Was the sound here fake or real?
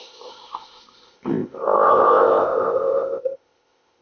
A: fake